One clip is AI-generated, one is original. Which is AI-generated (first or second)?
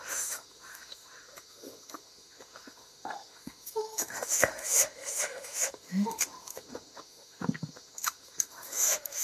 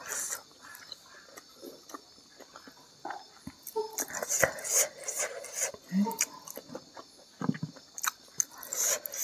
first